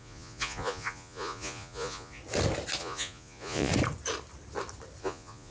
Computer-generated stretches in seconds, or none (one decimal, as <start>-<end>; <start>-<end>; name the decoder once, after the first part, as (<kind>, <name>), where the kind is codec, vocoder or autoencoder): 0.0-2.2 (vocoder, Vocos); 2.8-3.7; 5.0-5.5